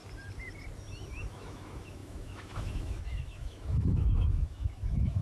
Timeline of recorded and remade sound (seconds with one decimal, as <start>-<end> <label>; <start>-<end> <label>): 0.0-1.3 recorded; 1.3-5.2 remade